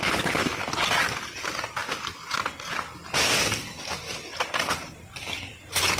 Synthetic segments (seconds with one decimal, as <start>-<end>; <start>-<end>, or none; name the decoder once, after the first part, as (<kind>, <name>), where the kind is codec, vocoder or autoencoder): none